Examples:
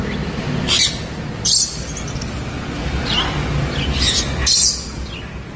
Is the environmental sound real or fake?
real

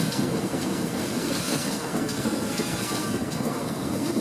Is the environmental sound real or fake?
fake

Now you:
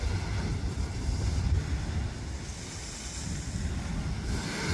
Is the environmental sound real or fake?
real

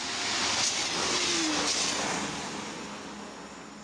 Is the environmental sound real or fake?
real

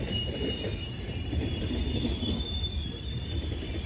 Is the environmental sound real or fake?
fake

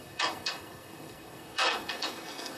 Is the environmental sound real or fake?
fake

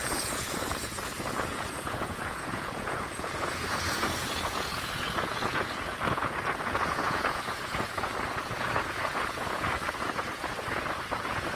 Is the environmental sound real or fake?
fake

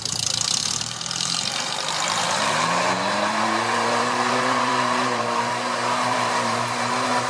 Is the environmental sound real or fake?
fake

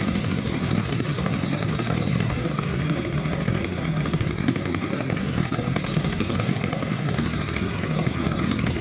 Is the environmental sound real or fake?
fake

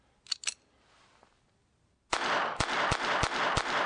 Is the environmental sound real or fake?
real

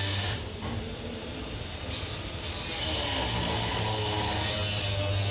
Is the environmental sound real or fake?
real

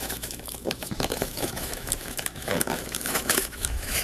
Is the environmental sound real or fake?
fake